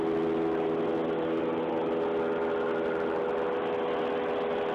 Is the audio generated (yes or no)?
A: no